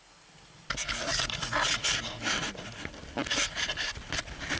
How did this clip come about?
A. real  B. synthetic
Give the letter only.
A